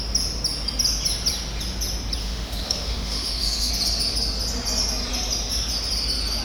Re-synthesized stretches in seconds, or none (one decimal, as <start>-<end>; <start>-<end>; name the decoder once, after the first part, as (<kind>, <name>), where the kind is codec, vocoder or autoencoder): 2.2-3.7 (autoencoder, DAC-VAE)